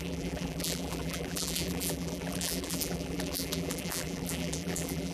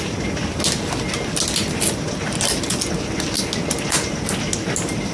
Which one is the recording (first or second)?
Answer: second